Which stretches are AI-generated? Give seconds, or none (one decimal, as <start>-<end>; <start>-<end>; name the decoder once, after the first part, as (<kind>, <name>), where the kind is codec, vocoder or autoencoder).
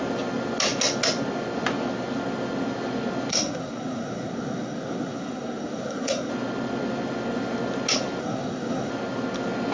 3.3-6.3 (codec, SNAC); 8.2-8.9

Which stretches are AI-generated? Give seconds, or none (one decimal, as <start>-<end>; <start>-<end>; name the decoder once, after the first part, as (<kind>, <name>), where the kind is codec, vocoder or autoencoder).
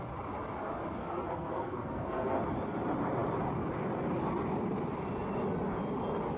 1.0-2.4 (codec, SNAC)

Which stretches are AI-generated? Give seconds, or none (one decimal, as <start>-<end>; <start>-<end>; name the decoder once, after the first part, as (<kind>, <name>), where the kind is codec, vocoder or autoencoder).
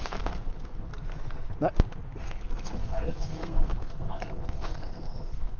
0.0-0.9 (codec, SNAC); 2.2-5.6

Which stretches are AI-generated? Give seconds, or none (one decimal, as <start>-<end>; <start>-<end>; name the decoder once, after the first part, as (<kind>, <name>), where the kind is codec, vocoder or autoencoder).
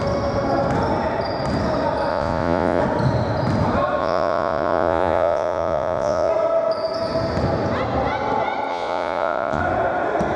2.1-2.8 (vocoder, Vocos); 4.0-6.3; 8.7-9.6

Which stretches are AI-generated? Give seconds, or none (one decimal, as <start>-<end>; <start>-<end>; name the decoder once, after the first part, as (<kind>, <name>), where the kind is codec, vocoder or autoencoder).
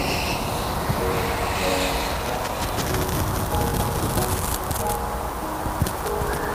0.5-1.7 (vocoder, BigVGAN v2)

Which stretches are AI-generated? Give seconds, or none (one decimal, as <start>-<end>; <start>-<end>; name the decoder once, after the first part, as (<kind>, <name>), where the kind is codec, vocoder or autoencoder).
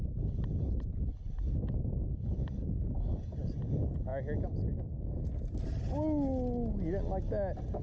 none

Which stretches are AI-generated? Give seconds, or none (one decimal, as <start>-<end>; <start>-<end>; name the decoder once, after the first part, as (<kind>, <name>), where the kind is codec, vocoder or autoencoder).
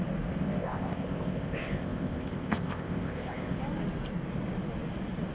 0.4-3.6 (codec, ZipCodec)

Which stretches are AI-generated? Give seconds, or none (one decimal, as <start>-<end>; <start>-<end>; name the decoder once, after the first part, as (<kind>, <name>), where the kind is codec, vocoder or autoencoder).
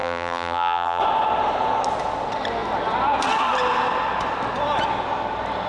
0.0-1.0 (vocoder, BigVGAN v2)